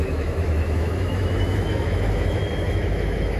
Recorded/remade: remade